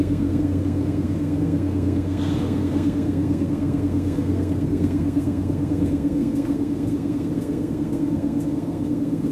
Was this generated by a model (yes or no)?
yes